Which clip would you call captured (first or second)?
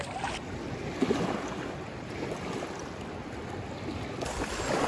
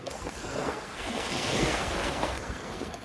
first